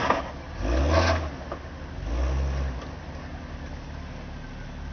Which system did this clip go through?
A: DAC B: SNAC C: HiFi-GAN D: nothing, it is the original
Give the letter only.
D